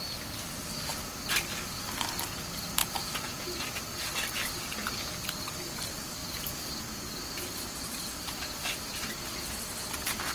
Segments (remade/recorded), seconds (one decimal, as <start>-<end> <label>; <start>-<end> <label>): 0.0-2.8 recorded; 2.8-3.8 remade; 3.8-10.3 recorded